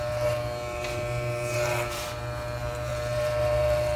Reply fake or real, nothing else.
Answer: fake